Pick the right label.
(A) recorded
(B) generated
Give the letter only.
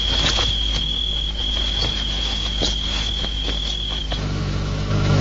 B